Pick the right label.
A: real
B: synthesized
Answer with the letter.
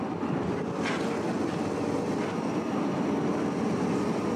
A